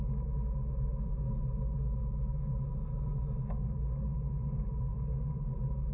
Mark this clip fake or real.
real